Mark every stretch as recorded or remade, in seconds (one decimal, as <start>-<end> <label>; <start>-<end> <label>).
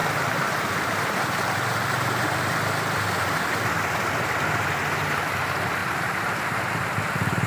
0.0-3.7 remade; 3.7-5.8 recorded; 5.8-7.5 remade